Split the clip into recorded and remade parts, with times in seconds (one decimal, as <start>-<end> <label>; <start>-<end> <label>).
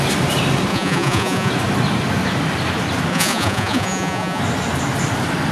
0.0-0.7 recorded; 0.7-1.5 remade; 1.5-3.1 recorded; 3.1-4.4 remade; 4.4-5.5 recorded